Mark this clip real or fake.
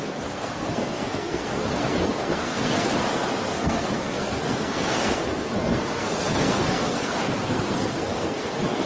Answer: fake